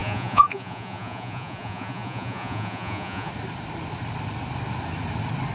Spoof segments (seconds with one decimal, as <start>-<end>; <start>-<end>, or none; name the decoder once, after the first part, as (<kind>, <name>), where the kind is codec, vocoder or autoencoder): 0.0-3.3 (vocoder, Vocos)